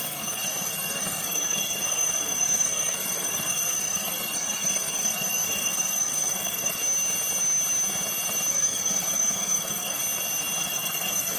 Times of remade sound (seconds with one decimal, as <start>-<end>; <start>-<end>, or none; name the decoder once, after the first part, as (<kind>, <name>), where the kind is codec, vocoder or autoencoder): 0.0-6.8 (codec, SNAC); 8.5-10.0; 10.6-11.4